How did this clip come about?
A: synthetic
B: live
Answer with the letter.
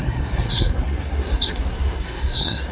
A